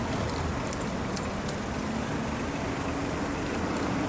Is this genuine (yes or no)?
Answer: yes